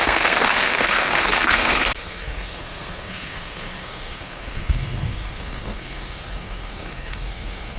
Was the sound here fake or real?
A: fake